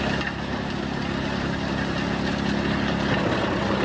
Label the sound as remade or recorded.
recorded